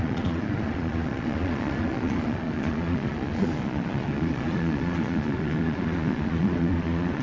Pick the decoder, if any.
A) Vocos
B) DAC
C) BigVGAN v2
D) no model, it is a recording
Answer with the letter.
A